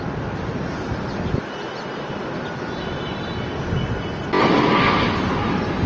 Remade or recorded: recorded